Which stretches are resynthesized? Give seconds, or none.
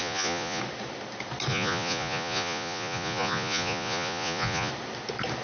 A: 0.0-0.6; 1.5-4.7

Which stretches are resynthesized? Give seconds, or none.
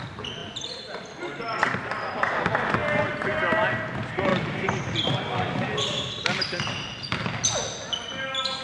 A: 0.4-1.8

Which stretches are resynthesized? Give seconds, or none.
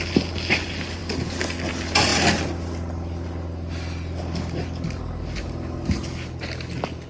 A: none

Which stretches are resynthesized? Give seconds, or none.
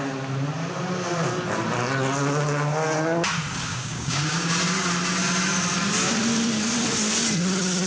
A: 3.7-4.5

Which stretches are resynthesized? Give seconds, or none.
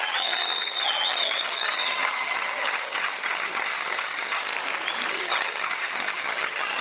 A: 0.0-4.5; 5.1-6.8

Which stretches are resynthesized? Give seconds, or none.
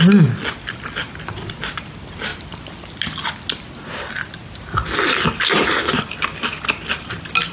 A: none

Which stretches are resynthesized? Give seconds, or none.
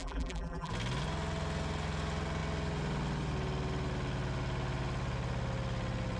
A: 0.0-0.7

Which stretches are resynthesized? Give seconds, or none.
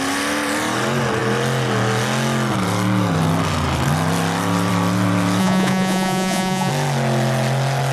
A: 5.4-6.7